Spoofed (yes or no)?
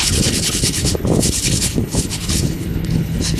yes